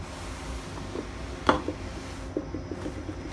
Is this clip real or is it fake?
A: real